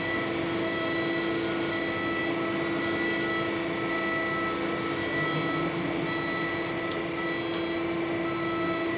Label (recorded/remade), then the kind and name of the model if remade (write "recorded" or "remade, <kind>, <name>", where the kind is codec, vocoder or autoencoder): recorded